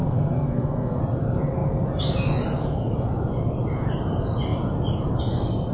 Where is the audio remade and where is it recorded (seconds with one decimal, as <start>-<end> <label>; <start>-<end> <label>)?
0.0-1.0 remade; 1.0-5.7 recorded